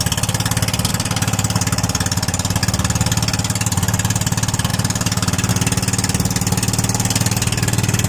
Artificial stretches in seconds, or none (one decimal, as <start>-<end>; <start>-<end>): 0.9-2.6; 4.7-5.5